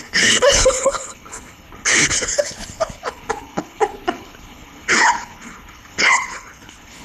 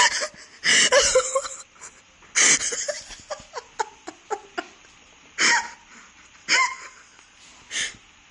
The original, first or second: second